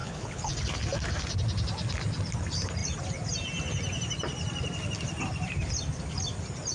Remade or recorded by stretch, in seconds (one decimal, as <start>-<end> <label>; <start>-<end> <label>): 0.0-0.5 remade; 0.5-6.7 recorded